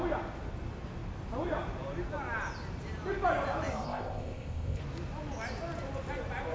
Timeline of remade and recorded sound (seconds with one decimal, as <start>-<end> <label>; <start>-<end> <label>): 0.0-3.7 recorded; 3.7-4.8 remade; 4.8-6.5 recorded